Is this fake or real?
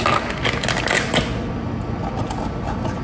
real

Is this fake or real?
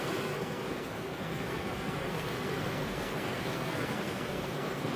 fake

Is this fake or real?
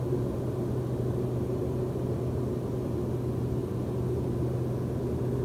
real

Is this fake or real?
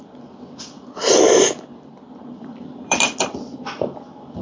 fake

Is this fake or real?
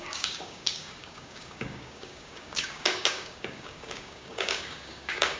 fake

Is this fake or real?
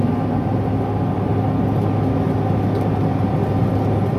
real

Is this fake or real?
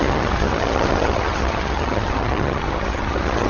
fake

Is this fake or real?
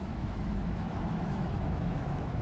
fake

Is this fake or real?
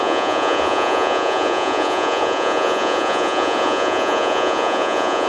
fake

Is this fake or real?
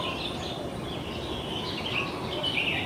real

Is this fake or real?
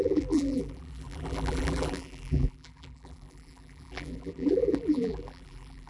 fake